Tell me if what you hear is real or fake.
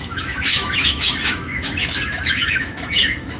fake